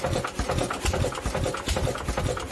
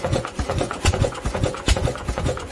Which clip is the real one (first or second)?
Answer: first